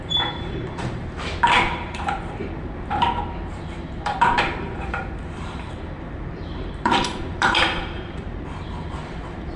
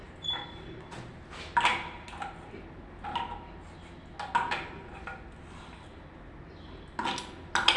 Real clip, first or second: second